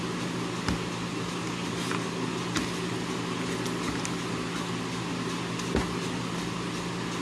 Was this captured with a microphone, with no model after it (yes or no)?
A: yes